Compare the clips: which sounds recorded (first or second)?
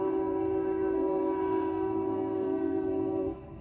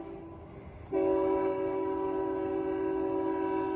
second